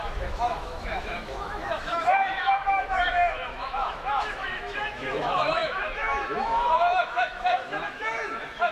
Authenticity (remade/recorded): remade